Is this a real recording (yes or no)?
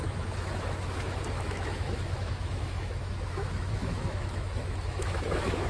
no